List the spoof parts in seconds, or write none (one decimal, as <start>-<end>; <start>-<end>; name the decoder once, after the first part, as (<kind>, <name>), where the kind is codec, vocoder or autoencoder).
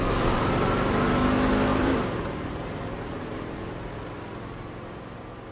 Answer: 1.7-3.9 (vocoder, BigVGAN v2)